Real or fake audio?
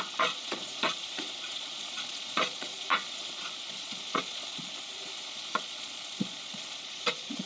fake